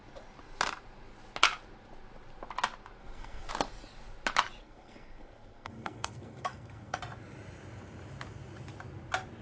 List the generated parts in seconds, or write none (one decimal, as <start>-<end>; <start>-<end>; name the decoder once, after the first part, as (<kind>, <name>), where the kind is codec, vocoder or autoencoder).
3.0-3.5 (codec, SNAC); 4.6-7.0